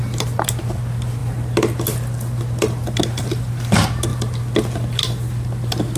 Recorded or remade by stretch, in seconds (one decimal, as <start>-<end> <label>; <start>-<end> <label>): 0.0-6.0 recorded